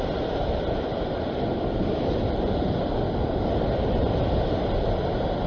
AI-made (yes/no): no